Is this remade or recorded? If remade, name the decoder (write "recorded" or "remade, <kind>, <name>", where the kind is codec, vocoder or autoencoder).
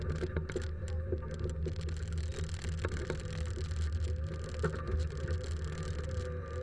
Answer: recorded